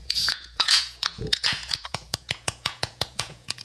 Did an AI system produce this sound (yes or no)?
yes